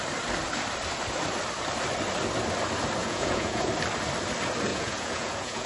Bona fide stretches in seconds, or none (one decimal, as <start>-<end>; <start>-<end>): 0.0-3.0; 3.7-4.7